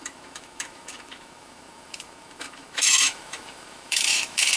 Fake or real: fake